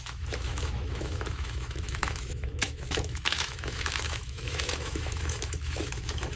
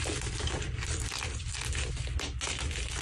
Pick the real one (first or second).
second